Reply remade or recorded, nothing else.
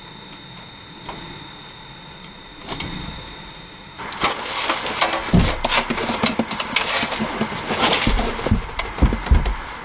recorded